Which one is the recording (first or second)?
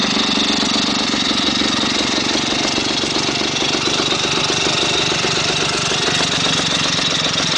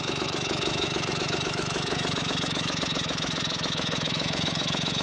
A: first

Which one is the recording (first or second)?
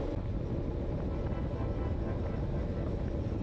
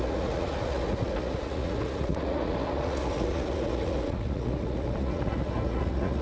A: first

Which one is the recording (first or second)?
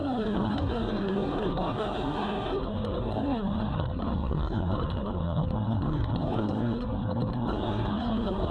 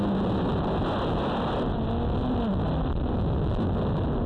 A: second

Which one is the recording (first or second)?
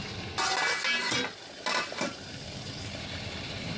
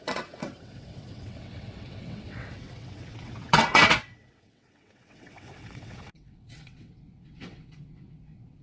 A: first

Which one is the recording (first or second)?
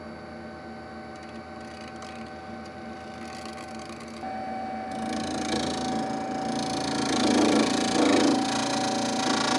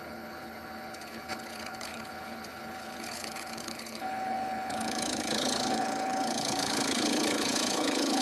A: first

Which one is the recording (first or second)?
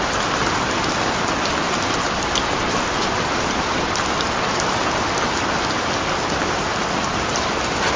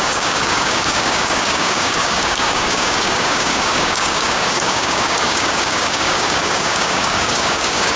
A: first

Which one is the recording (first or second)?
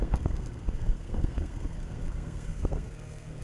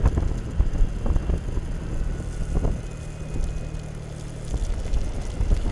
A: second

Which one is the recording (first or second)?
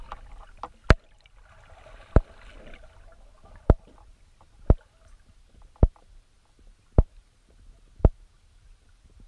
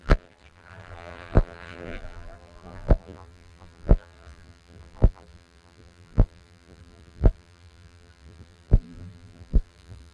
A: first